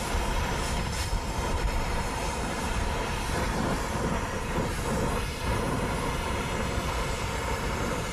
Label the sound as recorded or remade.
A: remade